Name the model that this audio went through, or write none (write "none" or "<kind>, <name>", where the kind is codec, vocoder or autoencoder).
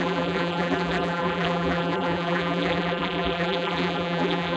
vocoder, BigVGAN v2